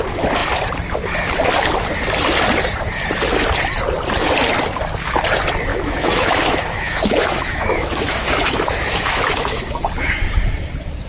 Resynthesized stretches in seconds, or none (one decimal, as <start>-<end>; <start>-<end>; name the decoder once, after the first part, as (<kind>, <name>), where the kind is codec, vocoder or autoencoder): 5.7-9.6 (autoencoder, DAC-VAE)